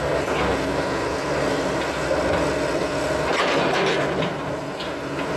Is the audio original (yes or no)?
yes